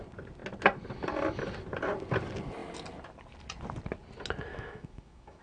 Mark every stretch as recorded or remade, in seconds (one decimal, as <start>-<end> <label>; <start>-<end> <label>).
0.0-4.5 recorded; 4.5-5.4 remade